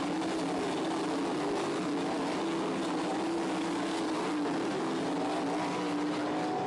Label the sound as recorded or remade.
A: recorded